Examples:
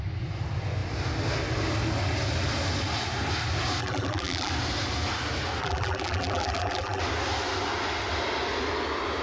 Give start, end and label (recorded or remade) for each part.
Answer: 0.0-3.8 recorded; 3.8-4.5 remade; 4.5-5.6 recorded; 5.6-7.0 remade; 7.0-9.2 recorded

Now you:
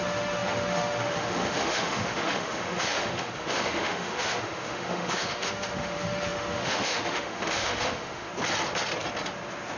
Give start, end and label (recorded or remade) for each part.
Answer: 0.0-8.3 remade; 8.3-9.8 recorded